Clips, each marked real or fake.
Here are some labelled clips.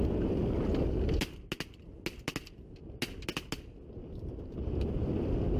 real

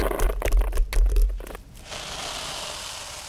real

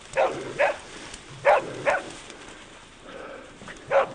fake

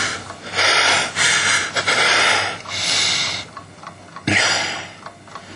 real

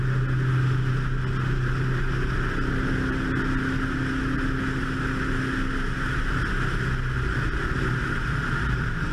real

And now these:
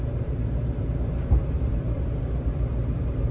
fake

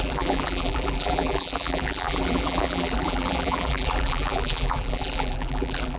fake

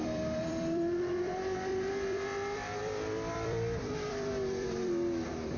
fake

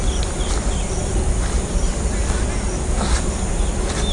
real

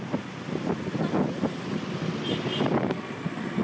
real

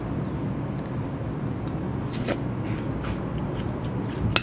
real